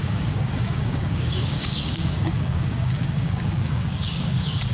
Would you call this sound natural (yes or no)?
no